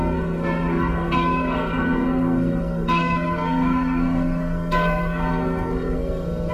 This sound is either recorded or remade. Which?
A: remade